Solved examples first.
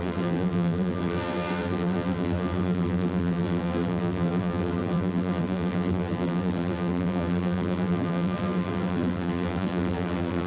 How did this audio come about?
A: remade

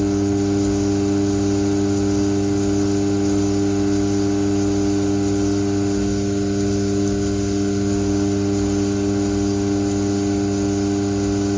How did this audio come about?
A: recorded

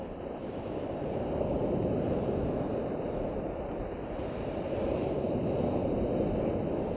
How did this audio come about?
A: recorded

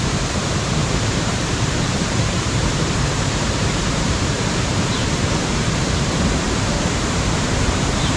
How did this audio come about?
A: remade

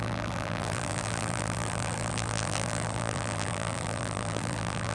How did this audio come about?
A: remade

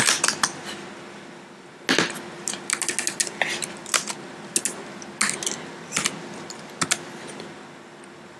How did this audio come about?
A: recorded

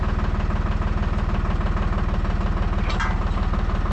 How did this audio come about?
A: recorded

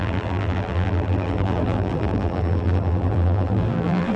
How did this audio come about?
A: remade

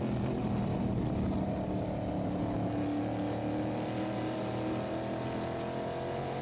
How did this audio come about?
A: recorded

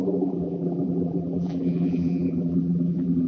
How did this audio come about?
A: remade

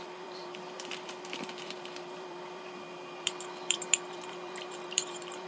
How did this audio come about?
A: remade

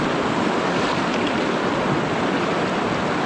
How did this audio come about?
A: recorded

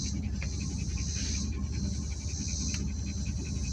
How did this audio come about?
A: recorded